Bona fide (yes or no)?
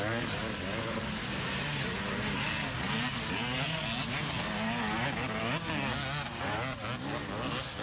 yes